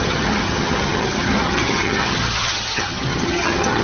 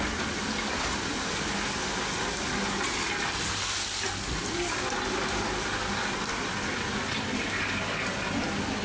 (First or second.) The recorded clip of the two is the second